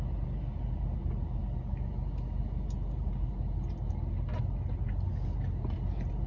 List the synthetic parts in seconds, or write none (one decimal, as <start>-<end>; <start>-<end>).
none